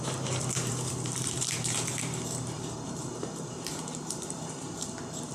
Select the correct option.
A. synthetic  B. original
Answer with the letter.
A